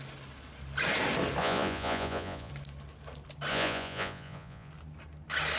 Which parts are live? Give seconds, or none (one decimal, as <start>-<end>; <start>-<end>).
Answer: 0.0-1.4; 2.5-3.5; 4.7-5.6

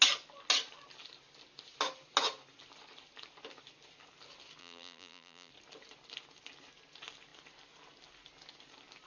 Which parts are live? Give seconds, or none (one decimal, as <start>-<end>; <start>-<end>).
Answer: 0.0-4.6; 5.5-9.1

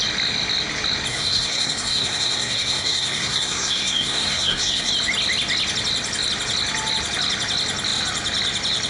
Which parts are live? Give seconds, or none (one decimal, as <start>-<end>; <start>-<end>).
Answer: 0.0-1.1; 4.9-8.9

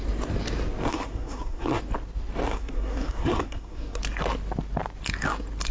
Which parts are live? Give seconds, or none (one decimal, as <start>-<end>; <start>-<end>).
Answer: 0.0-0.9; 1.8-2.5; 4.0-5.7

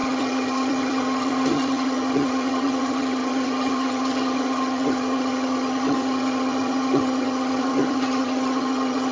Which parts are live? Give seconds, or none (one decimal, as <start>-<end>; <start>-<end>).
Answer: none